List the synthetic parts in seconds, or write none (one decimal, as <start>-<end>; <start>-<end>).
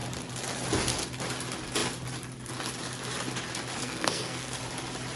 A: 3.8-4.6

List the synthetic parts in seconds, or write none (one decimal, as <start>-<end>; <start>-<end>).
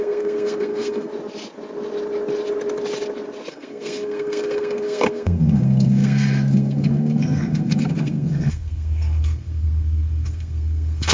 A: 0.0-1.1; 3.5-11.1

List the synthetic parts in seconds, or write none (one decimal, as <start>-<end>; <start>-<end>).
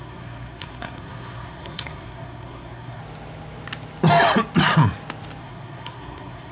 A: 0.0-3.0; 5.4-6.5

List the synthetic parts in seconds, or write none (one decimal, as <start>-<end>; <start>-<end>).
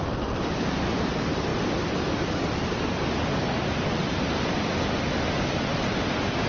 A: none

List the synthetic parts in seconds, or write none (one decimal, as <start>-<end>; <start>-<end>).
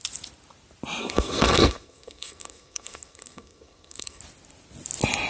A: 1.0-4.2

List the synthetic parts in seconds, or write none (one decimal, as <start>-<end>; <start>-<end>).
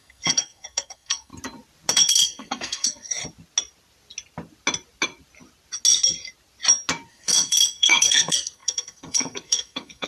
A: 0.0-1.3; 1.9-3.2; 7.1-10.1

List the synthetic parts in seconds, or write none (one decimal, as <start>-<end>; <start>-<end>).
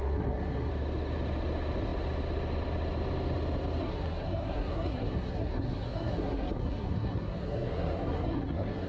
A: 0.0-0.7; 3.8-8.9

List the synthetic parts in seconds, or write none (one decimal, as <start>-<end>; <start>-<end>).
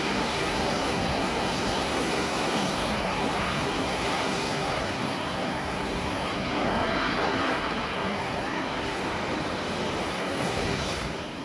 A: 0.0-9.0; 10.1-11.4